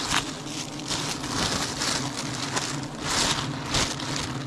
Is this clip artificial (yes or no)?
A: no